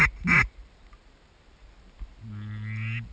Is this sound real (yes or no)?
yes